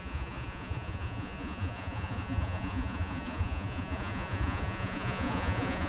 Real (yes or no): no